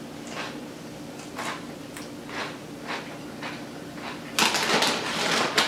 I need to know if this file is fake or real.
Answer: real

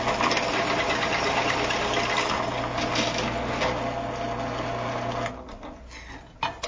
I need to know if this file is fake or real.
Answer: real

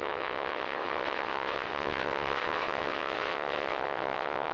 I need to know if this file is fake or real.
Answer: fake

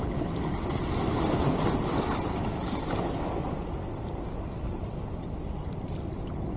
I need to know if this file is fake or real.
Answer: real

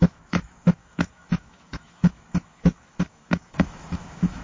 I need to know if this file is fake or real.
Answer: fake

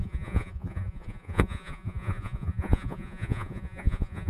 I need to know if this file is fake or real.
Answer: fake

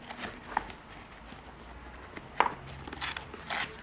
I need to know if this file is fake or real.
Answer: real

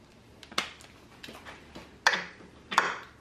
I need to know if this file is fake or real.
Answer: real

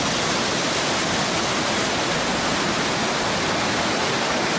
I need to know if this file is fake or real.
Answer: real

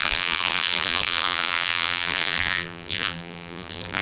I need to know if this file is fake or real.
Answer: fake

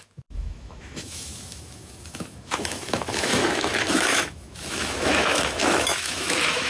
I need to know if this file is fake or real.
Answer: fake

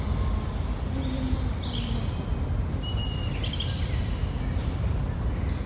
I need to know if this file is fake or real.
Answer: real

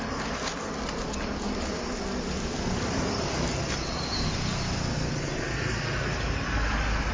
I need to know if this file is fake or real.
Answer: real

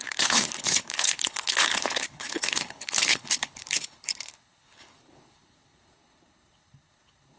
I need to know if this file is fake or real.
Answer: fake